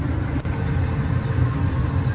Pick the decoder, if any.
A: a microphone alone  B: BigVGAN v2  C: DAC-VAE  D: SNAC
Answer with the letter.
A